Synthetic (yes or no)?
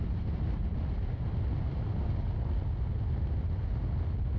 no